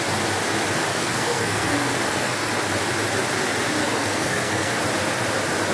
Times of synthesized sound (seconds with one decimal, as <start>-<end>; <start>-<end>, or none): 0.9-2.5; 3.8-4.8